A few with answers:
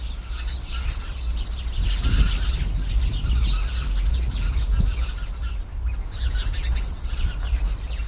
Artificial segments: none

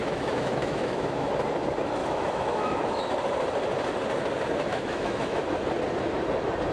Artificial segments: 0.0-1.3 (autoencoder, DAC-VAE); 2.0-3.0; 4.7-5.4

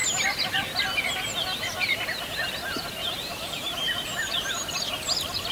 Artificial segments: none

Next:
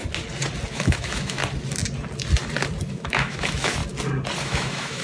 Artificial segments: 0.7-1.4 (autoencoder, DAC-VAE); 2.9-3.8; 4.4-5.0

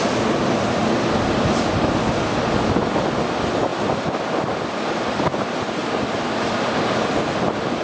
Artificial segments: none

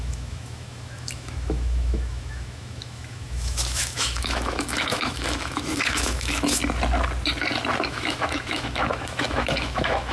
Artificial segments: 0.0-6.6 (autoencoder, DAC-VAE); 7.8-10.1